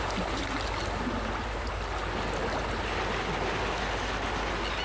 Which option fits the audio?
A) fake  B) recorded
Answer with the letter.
B